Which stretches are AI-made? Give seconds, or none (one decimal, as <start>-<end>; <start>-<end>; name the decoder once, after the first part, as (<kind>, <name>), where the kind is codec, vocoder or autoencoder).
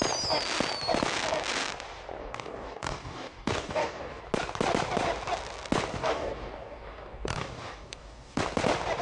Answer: 2.2-4.2 (codec, DAC); 6.0-8.4